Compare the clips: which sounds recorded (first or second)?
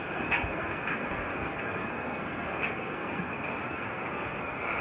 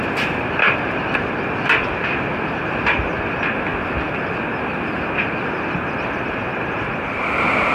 second